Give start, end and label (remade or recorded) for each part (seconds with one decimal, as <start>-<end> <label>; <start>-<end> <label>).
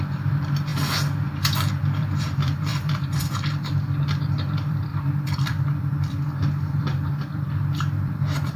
0.0-0.7 remade; 0.7-1.7 recorded; 1.7-8.6 remade